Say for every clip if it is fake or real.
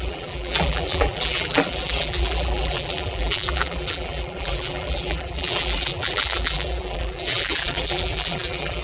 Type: fake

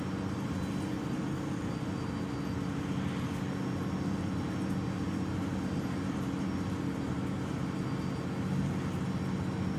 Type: real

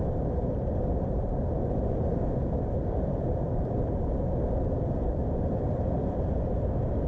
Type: fake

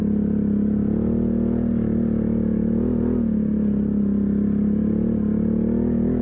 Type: real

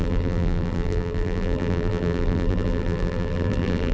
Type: fake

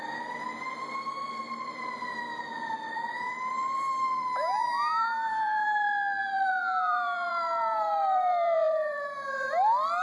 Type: fake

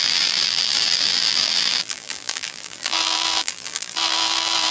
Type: fake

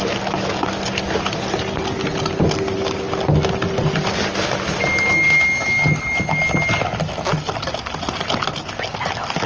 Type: real